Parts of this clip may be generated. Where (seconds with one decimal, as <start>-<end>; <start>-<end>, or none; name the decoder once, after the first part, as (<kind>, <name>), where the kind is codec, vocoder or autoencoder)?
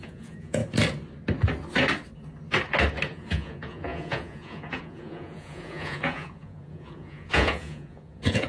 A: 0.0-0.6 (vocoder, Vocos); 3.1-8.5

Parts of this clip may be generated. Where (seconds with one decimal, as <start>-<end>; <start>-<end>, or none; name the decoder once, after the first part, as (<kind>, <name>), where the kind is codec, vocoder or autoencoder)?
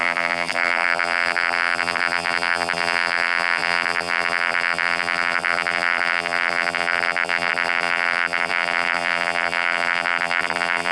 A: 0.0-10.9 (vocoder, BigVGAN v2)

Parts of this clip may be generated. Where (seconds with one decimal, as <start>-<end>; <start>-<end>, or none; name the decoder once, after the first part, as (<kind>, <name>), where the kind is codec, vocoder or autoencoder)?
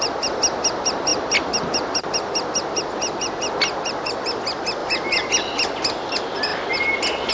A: 1.1-2.0 (vocoder, BigVGAN v2); 4.8-5.3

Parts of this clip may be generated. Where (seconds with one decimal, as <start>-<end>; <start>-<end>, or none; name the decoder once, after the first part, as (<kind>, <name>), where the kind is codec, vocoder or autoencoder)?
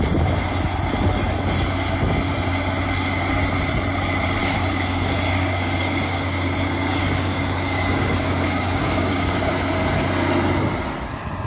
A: 4.4-9.5 (codec, DAC)